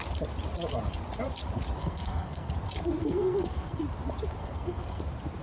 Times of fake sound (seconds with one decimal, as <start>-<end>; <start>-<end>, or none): 1.8-2.5; 3.0-3.8; 4.4-5.0